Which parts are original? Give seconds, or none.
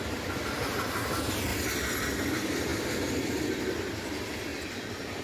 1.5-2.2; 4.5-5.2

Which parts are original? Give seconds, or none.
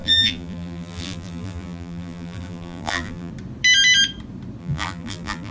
3.3-4.6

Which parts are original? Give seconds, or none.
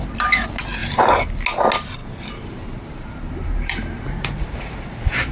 0.0-0.8; 1.4-2.0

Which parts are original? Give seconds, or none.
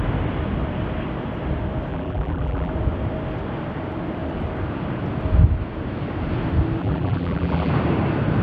0.0-1.9; 2.7-6.8; 7.7-8.4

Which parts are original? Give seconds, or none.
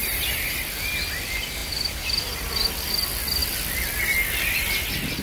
0.6-5.2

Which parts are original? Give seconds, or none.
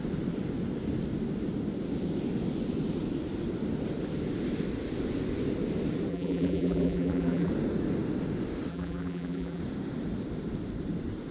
0.0-6.1; 7.5-8.7; 9.6-11.3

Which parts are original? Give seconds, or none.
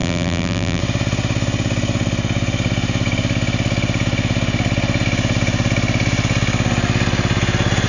0.8-7.9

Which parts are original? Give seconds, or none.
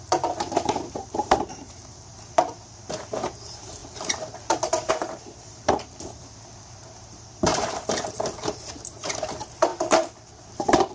none